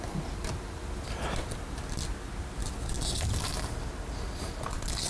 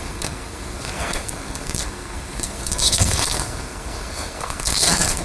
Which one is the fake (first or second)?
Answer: second